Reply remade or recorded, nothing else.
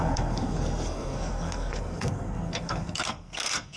remade